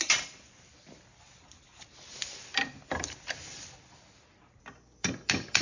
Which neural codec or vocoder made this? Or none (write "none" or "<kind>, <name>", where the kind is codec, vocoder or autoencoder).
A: vocoder, BigVGAN v2